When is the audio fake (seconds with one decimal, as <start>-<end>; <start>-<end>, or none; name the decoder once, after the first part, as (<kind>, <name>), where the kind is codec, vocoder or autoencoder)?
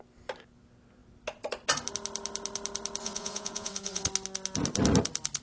3.0-4.0 (vocoder, Vocos)